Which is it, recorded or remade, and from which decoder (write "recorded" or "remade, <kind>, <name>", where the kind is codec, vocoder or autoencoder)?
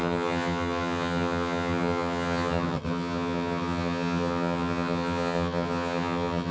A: remade, vocoder, HiFi-GAN